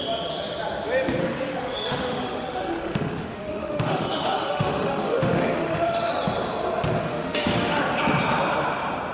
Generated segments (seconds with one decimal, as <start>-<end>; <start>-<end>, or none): 1.2-6.1; 7.1-7.8